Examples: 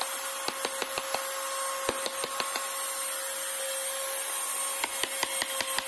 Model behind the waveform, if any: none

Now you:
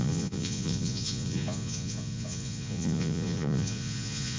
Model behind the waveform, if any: vocoder, Vocos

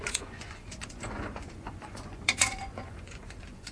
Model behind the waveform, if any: vocoder, Vocos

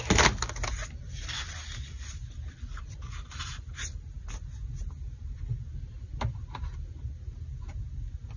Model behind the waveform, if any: none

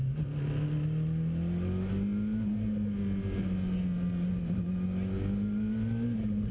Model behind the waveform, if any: none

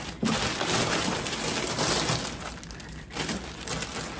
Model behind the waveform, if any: none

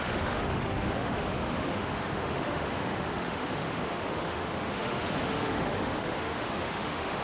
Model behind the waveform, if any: autoencoder, DAC-VAE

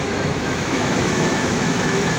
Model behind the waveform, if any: autoencoder, DAC-VAE